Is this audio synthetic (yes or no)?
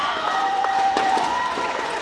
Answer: yes